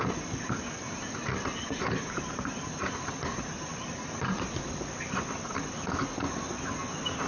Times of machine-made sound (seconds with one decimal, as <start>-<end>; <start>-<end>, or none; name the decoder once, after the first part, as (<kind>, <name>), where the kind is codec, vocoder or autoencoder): 1.5-2.5 (vocoder, BigVGAN v2); 3.3-4.6